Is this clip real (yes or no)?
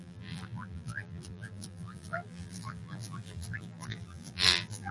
no